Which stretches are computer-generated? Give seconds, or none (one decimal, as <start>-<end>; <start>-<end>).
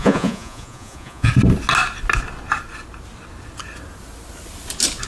0.0-1.3